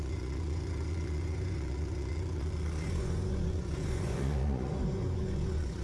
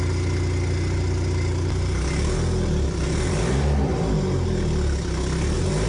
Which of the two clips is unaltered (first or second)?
second